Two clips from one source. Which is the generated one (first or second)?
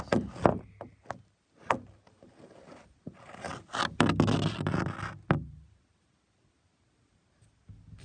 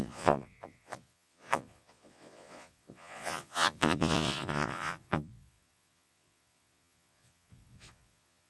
second